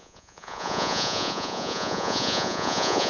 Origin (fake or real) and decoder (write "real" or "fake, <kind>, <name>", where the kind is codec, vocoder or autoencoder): fake, vocoder, Vocos